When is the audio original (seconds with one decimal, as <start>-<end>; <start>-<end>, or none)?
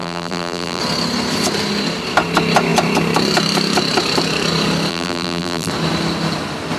0.8-4.9; 5.7-6.8